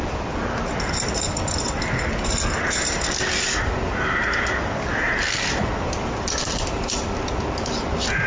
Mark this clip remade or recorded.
recorded